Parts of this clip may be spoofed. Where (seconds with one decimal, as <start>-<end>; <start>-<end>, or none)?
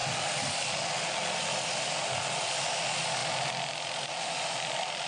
1.8-3.2; 4.1-5.1